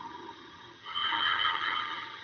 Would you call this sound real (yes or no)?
no